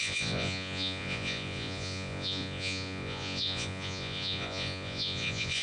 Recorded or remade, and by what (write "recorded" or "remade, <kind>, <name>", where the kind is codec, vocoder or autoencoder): remade, vocoder, Vocos